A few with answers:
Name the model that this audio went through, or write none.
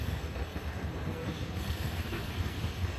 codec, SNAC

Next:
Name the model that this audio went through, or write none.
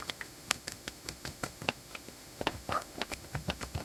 autoencoder, DAC-VAE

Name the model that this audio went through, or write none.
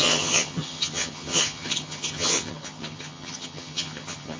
vocoder, HiFi-GAN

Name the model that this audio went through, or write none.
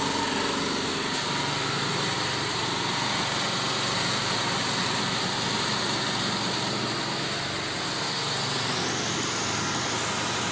none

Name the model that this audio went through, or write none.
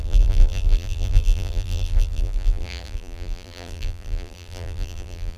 vocoder, BigVGAN v2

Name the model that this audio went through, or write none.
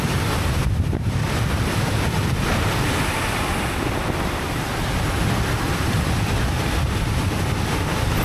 vocoder, BigVGAN v2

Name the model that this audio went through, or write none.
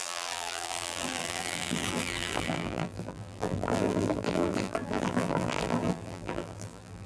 vocoder, BigVGAN v2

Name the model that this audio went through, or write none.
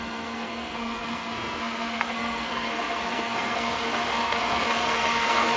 codec, SNAC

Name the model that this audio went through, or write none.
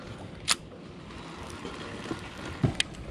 none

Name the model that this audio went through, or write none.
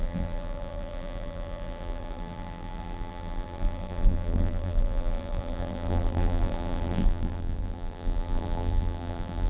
vocoder, BigVGAN v2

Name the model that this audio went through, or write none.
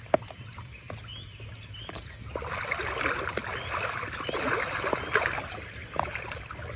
none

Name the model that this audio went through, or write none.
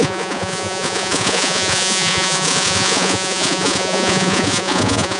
vocoder, Vocos